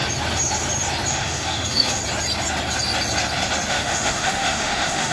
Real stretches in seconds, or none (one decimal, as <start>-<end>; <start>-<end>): 0.0-1.1; 2.0-3.7